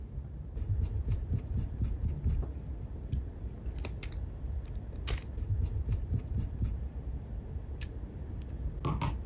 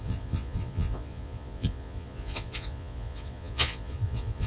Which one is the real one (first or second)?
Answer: first